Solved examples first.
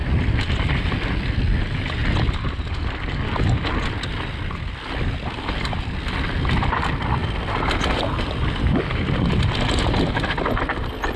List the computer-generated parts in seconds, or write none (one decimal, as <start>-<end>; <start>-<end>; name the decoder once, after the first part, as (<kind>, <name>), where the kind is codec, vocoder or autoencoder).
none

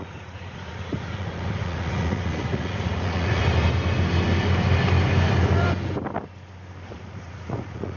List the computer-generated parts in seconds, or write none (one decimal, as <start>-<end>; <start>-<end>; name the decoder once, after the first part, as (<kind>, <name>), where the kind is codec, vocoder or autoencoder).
0.0-3.4 (vocoder, Vocos); 6.9-8.0

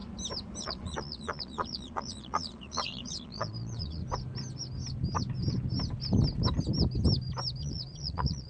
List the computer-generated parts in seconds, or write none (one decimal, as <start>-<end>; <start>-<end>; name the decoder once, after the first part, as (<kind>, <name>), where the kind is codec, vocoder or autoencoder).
0.6-4.0 (vocoder, Vocos); 7.6-8.5

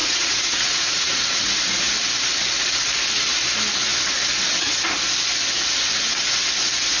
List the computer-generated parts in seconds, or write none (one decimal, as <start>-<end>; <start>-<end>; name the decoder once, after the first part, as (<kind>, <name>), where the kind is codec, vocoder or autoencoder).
0.0-1.4 (vocoder, Vocos)

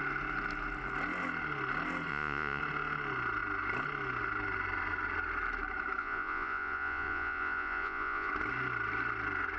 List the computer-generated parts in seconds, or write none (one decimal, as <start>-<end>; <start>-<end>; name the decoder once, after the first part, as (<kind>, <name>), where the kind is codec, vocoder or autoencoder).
2.1-2.6 (vocoder, Vocos); 6.0-8.3

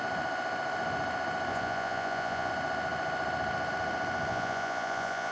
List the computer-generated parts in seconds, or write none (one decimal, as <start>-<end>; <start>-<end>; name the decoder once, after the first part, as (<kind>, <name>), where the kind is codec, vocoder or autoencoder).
1.5-2.5 (vocoder, Vocos); 4.3-5.3